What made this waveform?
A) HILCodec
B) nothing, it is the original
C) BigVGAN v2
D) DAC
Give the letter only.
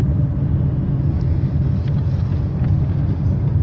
B